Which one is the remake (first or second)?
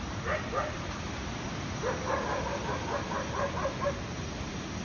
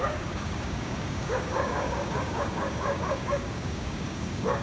second